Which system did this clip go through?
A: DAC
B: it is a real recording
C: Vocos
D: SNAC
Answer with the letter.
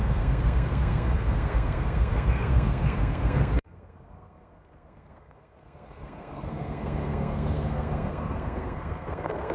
D